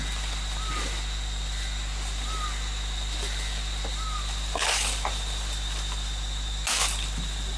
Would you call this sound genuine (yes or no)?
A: yes